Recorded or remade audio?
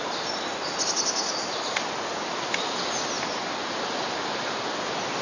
recorded